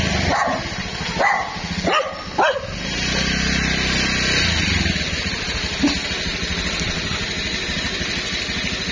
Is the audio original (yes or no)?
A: yes